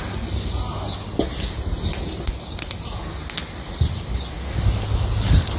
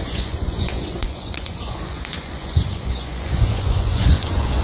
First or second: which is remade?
second